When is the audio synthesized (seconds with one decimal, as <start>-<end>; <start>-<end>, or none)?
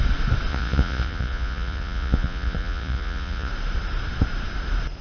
0.5-3.5